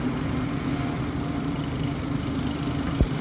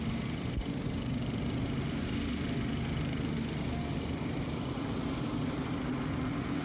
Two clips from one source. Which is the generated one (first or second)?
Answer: second